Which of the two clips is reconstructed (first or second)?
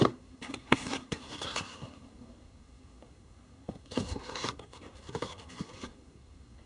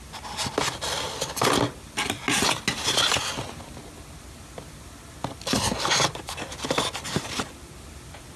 first